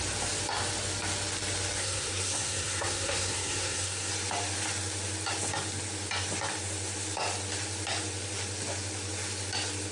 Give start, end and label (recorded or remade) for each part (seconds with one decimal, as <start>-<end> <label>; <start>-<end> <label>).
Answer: 0.0-1.8 recorded; 1.8-4.1 remade; 4.1-9.9 recorded